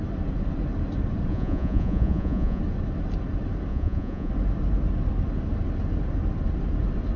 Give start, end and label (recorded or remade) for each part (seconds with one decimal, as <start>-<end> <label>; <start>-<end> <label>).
0.0-1.3 recorded; 1.3-2.6 remade; 2.6-3.7 recorded; 3.7-4.3 remade; 4.3-7.2 recorded